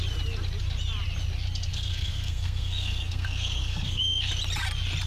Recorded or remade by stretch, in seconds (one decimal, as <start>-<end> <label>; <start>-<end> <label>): 0.0-1.7 recorded; 1.7-4.3 remade; 4.3-5.1 recorded